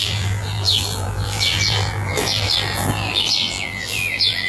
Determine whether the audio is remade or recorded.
remade